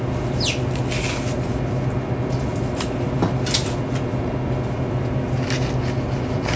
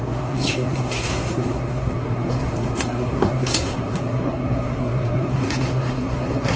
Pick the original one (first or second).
first